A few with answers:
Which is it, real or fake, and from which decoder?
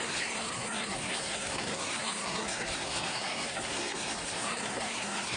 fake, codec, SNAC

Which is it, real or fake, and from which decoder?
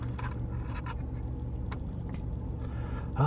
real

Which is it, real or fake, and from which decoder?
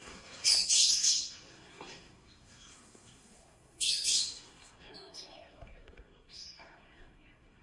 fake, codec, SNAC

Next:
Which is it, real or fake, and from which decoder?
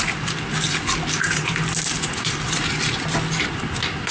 real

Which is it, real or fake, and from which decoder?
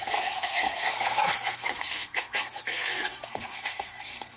fake, codec, SNAC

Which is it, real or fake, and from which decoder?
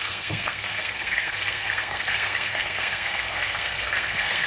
fake, codec, SNAC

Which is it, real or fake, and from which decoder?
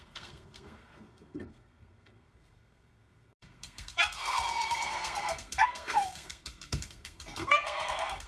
fake, codec, SNAC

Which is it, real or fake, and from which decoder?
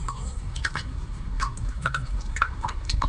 fake, codec, SNAC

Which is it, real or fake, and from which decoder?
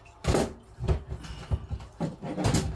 real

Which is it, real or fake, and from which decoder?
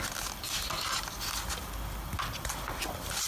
real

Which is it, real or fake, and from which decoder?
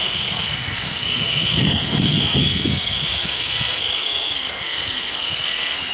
fake, codec, SNAC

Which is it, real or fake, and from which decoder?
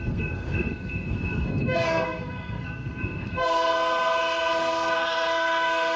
fake, codec, SNAC